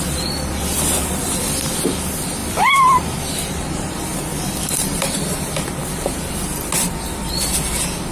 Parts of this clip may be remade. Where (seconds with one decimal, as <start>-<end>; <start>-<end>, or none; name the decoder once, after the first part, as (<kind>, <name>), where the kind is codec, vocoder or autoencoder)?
0.0-5.8 (vocoder, BigVGAN v2); 7.1-8.1